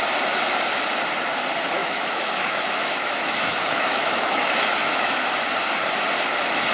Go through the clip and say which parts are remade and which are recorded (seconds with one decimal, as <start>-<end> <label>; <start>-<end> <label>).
0.0-1.8 recorded; 1.8-5.1 remade; 5.1-6.7 recorded